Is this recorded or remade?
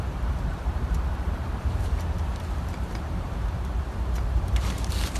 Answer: remade